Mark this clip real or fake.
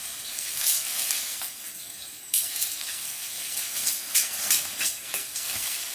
fake